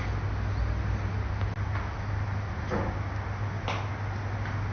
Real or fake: real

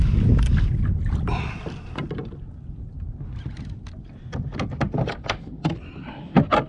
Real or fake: real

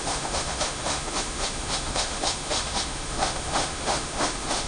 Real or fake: fake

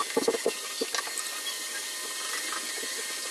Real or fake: real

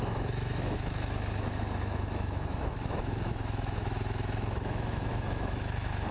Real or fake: fake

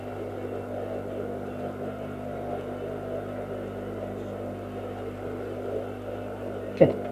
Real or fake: real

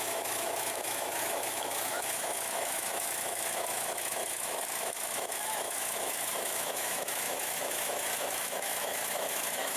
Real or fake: fake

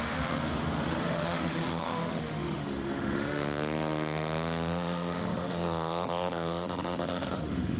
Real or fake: fake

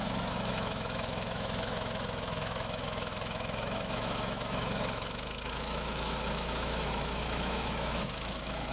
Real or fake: fake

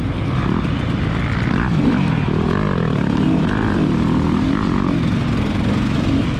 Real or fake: real